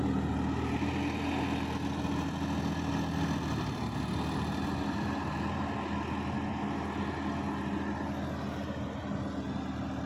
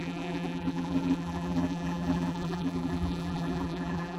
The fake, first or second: second